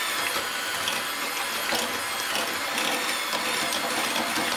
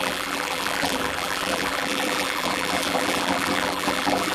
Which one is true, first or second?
first